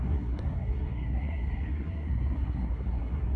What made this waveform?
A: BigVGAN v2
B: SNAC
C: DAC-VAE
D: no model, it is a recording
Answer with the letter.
B